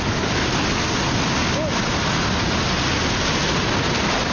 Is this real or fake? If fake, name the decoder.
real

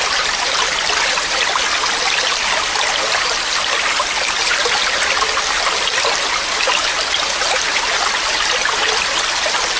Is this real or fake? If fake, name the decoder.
real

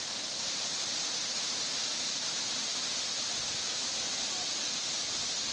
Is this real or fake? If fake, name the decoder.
real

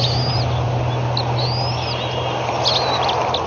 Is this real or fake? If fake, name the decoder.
real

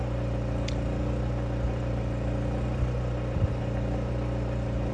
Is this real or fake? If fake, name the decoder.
real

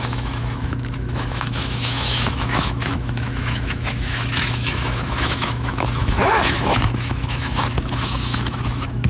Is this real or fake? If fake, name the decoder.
fake, autoencoder, DAC-VAE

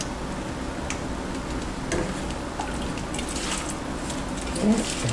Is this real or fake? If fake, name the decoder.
real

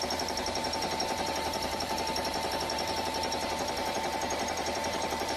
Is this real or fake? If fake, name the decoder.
fake, vocoder, BigVGAN v2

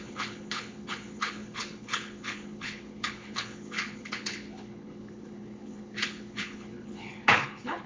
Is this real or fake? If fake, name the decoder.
fake, codec, HILCodec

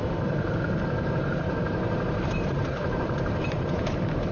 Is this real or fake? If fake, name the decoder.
fake, vocoder, BigVGAN v2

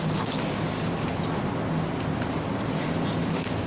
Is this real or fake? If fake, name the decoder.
real